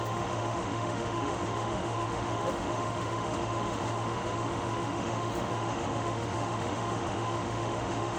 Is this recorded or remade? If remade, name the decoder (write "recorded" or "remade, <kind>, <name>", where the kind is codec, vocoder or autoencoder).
remade, autoencoder, DAC-VAE